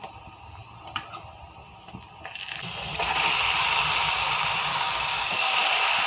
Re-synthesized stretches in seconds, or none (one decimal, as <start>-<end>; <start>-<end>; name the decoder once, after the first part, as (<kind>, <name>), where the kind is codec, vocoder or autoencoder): 4.7-5.6 (codec, DAC)